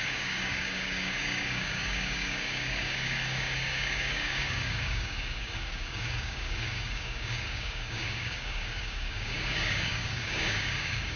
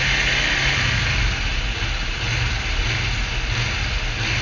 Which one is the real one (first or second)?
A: second